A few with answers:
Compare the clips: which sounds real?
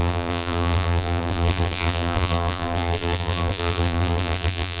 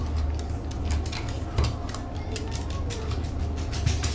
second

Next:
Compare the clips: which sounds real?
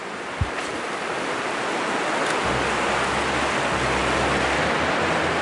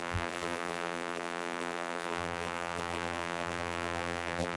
first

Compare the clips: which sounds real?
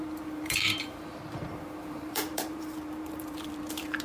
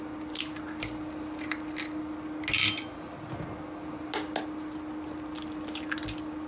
second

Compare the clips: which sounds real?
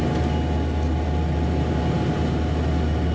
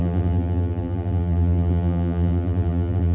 first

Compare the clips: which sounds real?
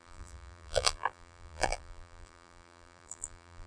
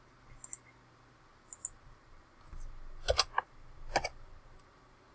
second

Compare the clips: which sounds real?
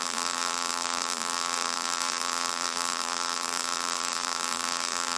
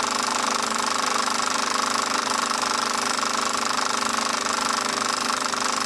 second